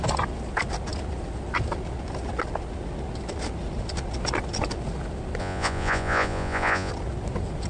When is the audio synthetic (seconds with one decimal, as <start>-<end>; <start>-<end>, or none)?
5.4-6.9